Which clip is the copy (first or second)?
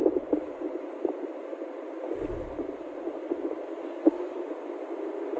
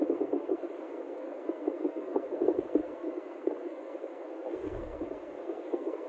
second